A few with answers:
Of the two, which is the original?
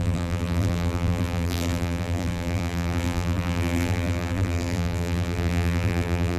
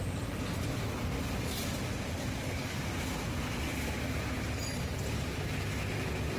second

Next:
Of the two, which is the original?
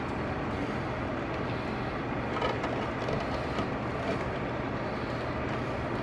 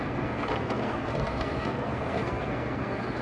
first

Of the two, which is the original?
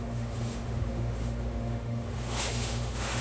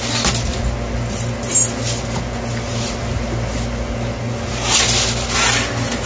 second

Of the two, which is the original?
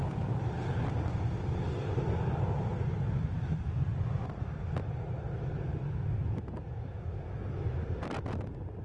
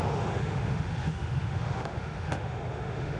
first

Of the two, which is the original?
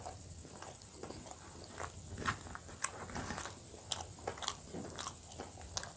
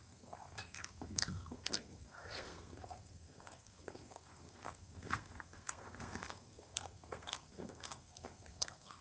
first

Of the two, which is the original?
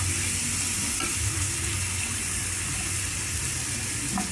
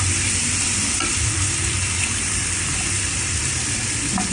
first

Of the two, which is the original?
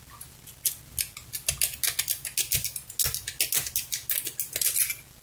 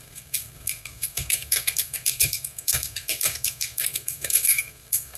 first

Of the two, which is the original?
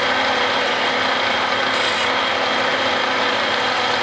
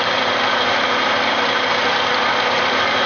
first